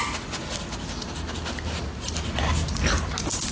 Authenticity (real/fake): real